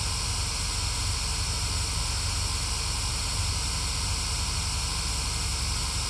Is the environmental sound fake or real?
real